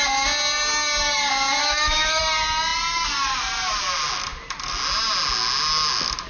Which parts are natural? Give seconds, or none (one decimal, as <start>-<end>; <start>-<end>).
0.0-1.6; 2.2-6.3